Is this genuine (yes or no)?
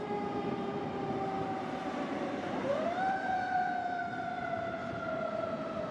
no